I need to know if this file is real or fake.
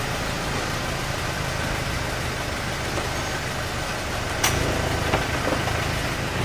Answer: real